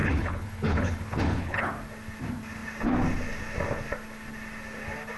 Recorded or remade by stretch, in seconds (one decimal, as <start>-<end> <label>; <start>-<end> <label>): 0.0-1.7 remade; 1.7-5.2 recorded